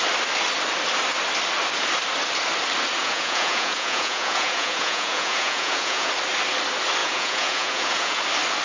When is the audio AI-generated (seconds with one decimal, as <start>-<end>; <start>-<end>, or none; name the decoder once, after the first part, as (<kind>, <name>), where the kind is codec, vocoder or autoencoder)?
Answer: 3.0-6.1 (vocoder, Vocos); 7.0-8.2